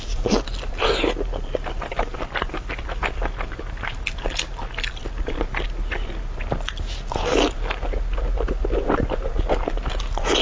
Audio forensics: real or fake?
real